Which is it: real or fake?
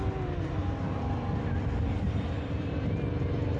real